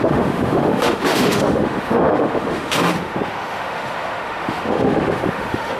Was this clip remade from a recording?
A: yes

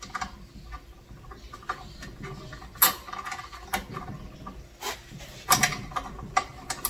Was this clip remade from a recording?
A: no